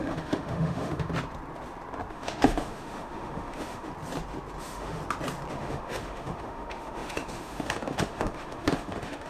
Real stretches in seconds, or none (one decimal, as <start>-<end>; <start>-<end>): 1.1-2.1; 3.9-4.6; 5.0-5.5